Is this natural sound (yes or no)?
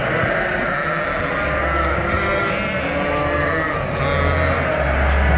yes